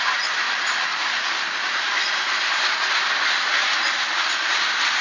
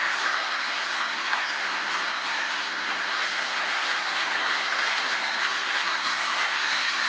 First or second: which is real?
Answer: first